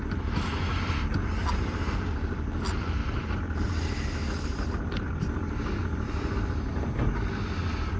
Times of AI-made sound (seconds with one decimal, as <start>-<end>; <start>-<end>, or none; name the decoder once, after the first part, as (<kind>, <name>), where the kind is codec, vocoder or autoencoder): none